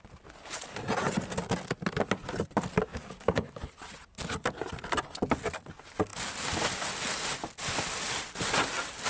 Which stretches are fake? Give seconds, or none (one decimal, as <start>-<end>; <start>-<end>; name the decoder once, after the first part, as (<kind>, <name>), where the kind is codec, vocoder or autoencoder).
2.9-3.7 (codec, DAC)